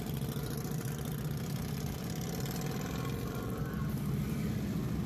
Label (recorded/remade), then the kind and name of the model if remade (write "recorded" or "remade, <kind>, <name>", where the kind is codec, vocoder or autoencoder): remade, vocoder, BigVGAN v2